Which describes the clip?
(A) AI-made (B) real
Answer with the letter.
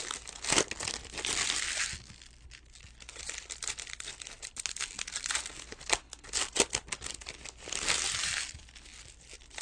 B